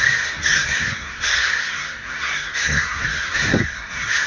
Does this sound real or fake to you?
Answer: fake